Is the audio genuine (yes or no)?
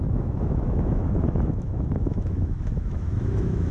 no